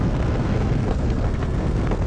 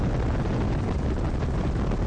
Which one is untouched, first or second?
second